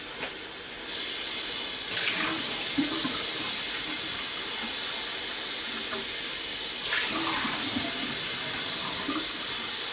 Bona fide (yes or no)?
yes